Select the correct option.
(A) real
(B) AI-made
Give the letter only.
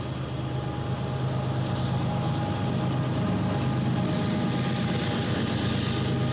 A